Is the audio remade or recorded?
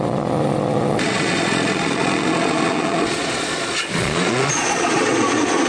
remade